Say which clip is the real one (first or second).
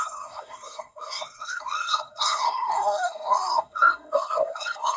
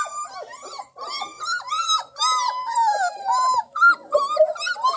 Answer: second